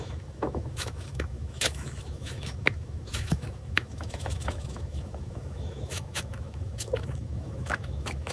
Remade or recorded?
remade